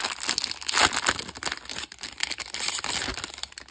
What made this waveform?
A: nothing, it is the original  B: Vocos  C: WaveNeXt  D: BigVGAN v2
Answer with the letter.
A